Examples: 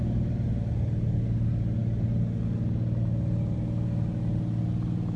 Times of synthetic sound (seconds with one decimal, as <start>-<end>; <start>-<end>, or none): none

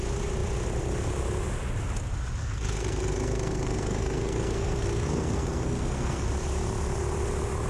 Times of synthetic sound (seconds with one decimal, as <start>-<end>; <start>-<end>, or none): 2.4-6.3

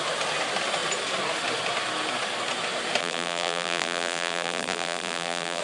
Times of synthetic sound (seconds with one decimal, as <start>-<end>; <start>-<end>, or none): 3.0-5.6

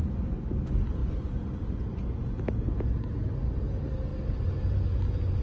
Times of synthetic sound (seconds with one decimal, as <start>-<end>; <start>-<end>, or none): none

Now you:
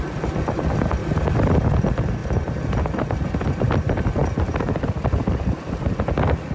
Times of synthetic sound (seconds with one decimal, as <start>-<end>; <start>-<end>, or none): 1.0-1.6; 2.2-3.3

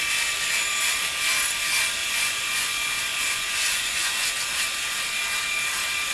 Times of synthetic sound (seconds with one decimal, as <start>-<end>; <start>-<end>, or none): 2.0-4.3